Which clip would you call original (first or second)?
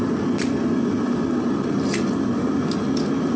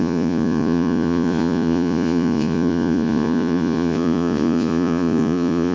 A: first